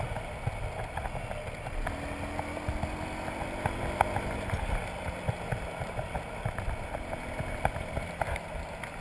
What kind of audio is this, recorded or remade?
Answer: recorded